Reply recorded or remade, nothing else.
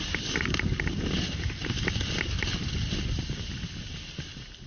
recorded